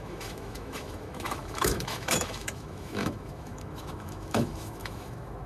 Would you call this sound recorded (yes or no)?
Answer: no